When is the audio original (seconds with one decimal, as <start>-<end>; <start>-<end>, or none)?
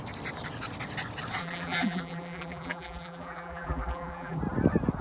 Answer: 0.0-1.4; 4.4-5.0